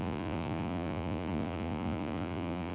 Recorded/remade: remade